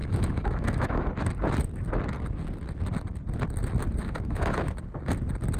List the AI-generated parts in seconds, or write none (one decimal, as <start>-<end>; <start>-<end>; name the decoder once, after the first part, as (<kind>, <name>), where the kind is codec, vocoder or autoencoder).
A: 0.0-1.1 (autoencoder, DAC-VAE); 4.0-4.8